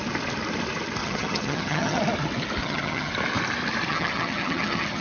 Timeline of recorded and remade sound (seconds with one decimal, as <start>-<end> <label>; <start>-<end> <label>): 0.0-1.0 recorded; 1.0-2.0 remade; 2.0-2.6 recorded; 2.6-3.1 remade; 3.1-3.9 recorded; 3.9-5.0 remade